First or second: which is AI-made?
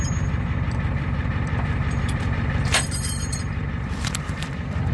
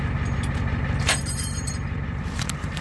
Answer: first